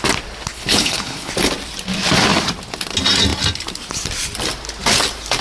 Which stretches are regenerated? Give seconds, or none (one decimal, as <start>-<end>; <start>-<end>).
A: 0.5-1.3